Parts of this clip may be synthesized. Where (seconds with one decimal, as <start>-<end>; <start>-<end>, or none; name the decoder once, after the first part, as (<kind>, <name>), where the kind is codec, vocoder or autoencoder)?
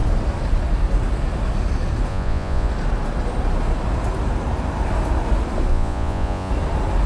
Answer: 2.1-2.7 (vocoder, Vocos); 5.7-6.5